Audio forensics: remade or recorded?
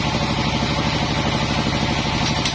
recorded